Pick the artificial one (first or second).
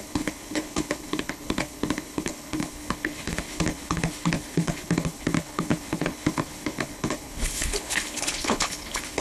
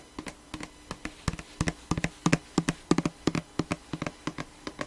first